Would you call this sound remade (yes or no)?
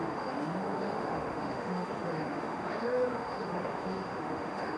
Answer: yes